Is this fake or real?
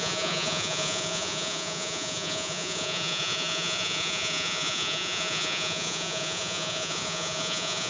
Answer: fake